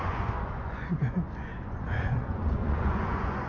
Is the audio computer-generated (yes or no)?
yes